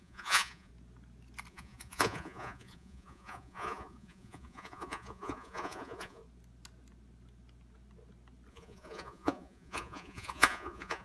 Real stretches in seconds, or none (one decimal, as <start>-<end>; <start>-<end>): 0.7-1.5; 6.2-8.5